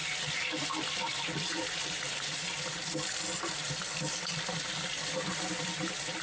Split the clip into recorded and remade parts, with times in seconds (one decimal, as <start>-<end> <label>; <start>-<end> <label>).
0.0-6.2 recorded